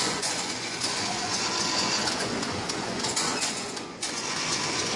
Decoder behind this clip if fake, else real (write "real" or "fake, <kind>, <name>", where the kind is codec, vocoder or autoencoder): fake, vocoder, Vocos